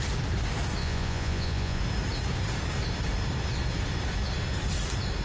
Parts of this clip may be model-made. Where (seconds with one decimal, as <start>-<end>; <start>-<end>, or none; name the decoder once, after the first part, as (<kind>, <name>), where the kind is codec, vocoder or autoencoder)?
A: 0.8-1.8 (vocoder, Vocos)

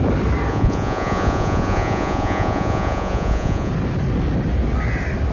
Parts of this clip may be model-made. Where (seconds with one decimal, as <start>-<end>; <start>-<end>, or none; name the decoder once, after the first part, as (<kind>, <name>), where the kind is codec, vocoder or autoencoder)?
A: 0.5-3.7 (vocoder, Vocos)

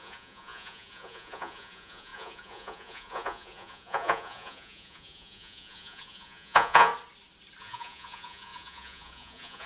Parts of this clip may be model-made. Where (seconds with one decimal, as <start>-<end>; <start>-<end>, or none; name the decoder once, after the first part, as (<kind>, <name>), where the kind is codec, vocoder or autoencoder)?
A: 0.0-6.9 (vocoder, Vocos); 7.6-9.7

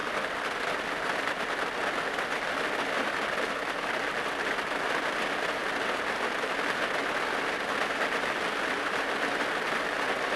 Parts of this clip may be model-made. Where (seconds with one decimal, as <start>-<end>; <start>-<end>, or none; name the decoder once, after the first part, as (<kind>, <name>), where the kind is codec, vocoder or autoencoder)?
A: none

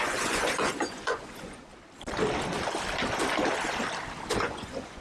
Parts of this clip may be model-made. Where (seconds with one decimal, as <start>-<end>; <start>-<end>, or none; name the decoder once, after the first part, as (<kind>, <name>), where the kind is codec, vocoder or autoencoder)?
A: 0.0-1.7 (vocoder, Vocos); 4.3-5.0

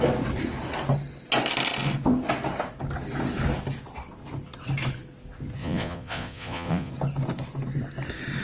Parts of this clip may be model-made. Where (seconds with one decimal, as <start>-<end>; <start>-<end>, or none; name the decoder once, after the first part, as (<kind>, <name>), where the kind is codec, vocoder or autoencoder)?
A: 5.6-6.9 (vocoder, Vocos)

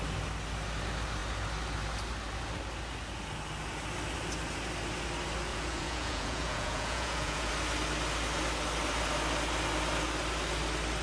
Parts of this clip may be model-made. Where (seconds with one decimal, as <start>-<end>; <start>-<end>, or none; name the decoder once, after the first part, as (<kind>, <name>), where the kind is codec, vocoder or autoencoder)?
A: 5.5-7.5 (vocoder, Vocos)

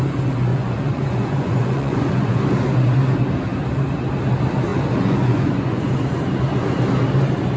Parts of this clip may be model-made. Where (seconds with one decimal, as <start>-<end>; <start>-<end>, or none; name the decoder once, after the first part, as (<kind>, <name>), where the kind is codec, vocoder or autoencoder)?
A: 0.5-2.4 (vocoder, Vocos); 4.7-5.9